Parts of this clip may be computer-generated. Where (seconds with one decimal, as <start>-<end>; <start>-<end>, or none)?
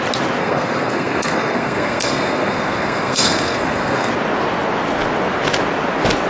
0.4-4.1